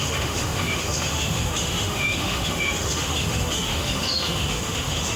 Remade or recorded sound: remade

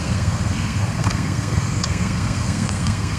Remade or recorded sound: remade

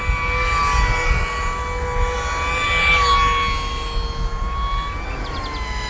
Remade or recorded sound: recorded